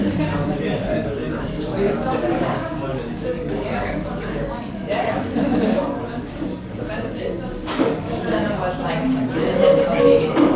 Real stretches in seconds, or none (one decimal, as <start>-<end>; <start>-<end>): 8.4-10.2